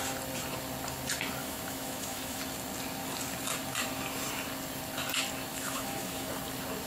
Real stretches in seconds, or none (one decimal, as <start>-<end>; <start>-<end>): 0.0-1.4; 2.4-5.5; 6.3-6.9